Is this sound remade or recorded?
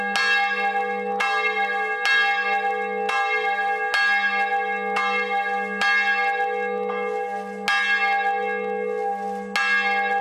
recorded